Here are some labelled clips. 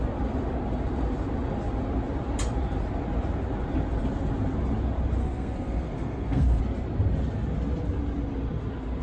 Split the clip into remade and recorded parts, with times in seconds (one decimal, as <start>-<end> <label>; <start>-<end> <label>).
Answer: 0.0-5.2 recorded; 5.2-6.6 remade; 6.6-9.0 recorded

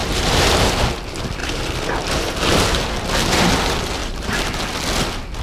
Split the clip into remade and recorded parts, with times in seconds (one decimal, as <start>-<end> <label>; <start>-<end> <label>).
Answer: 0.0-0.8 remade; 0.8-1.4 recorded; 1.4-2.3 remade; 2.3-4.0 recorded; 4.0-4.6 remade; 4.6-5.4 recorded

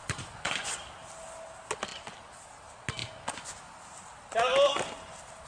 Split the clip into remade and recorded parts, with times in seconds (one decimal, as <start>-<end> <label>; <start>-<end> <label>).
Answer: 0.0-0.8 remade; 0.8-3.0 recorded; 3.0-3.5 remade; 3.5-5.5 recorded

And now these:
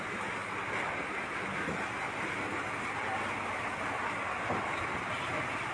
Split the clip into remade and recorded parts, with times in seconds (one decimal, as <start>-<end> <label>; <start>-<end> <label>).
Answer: 0.0-5.7 recorded

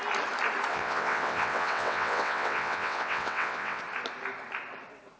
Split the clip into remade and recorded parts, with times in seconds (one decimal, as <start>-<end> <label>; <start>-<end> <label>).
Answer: 0.0-0.7 recorded; 0.7-3.8 remade; 3.8-5.2 recorded

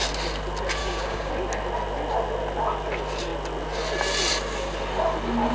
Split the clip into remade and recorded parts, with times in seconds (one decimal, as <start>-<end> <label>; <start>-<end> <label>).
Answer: 0.0-0.8 recorded; 0.8-1.3 remade; 1.3-5.5 recorded